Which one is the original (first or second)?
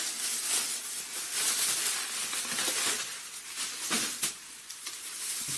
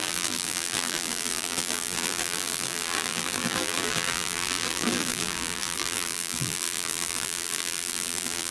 first